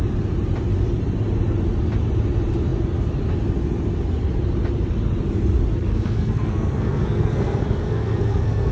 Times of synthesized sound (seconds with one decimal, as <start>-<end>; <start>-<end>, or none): 5.9-8.7